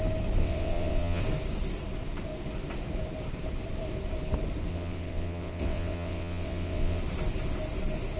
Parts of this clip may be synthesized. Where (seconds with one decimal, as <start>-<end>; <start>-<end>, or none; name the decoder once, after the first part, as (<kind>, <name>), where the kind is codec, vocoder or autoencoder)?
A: 0.4-1.2 (vocoder, WaveNeXt); 4.7-7.0